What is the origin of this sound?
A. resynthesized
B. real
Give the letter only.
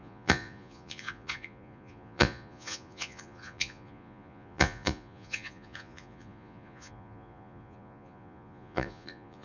A